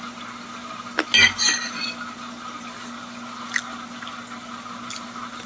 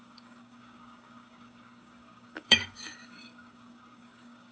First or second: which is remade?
second